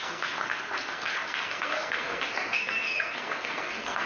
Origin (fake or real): fake